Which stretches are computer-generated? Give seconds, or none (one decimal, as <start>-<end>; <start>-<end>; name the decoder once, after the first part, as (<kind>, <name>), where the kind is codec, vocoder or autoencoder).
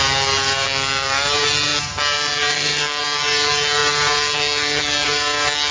none